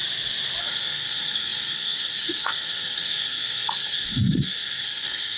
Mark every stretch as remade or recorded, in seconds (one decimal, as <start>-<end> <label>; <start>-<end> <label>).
0.0-0.6 recorded; 0.6-5.4 remade